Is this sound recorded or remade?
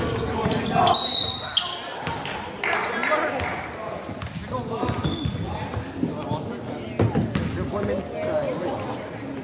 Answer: recorded